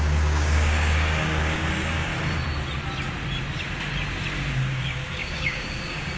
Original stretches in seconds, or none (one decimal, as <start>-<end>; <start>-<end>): 2.1-4.5